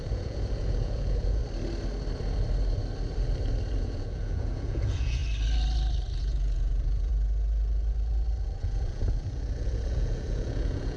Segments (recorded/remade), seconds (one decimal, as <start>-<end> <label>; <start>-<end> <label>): 0.0-1.4 remade; 1.4-3.8 recorded; 3.8-5.2 remade; 5.2-6.2 recorded; 6.2-7.1 remade; 7.1-8.6 recorded; 8.6-11.0 remade

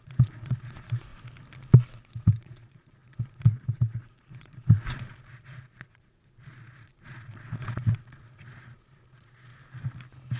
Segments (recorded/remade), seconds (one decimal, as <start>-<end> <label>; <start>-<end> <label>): 0.0-1.1 remade; 1.1-2.1 recorded; 2.1-9.5 remade; 9.5-10.4 recorded

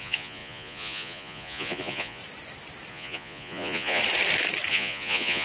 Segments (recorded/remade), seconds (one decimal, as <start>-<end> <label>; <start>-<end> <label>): 0.0-2.2 remade; 2.2-2.9 recorded; 2.9-4.0 remade; 4.0-4.7 recorded; 4.7-5.4 remade

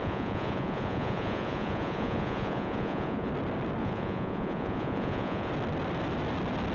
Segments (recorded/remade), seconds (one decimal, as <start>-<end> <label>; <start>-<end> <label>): 0.0-3.3 remade; 3.3-3.8 recorded; 3.8-5.5 remade; 5.5-6.7 recorded

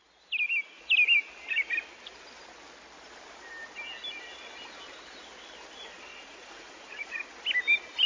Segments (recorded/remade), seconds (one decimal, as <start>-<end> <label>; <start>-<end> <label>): 0.0-6.1 recorded; 6.1-7.3 remade; 7.3-8.1 recorded